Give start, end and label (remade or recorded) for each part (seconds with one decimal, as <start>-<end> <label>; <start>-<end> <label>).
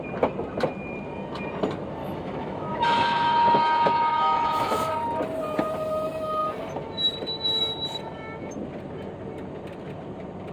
0.0-2.0 recorded; 2.0-4.9 remade; 4.9-10.5 recorded